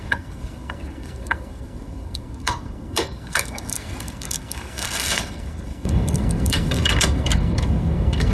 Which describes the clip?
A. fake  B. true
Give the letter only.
A